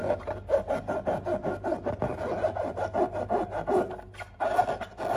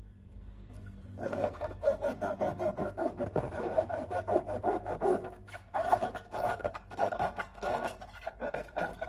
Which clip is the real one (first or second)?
first